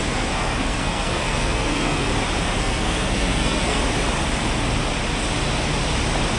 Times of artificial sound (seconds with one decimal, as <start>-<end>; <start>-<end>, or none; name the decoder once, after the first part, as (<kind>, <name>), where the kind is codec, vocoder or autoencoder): 0.0-2.1 (codec, SNAC); 2.6-3.8